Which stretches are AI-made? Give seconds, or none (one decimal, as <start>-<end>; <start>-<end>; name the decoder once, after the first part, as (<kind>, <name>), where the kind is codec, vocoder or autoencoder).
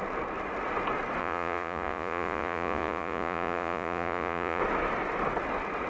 1.2-4.6 (vocoder, Vocos)